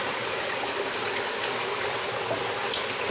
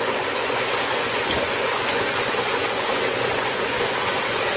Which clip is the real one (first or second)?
first